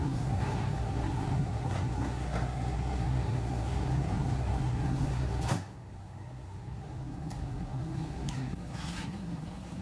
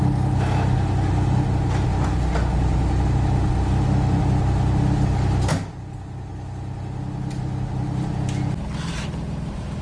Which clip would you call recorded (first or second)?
second